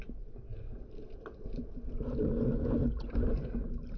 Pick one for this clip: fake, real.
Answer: real